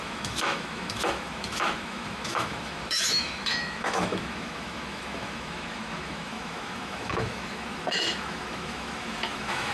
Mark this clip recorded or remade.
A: remade